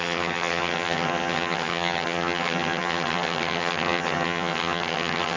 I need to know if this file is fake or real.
fake